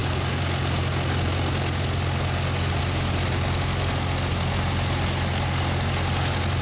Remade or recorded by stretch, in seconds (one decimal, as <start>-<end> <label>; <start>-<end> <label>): 0.0-6.6 recorded